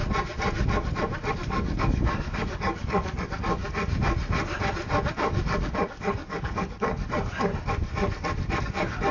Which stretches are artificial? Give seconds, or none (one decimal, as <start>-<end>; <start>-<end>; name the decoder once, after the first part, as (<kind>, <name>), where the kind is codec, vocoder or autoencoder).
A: 1.3-3.6 (codec, DAC); 5.1-7.5; 8.6-9.1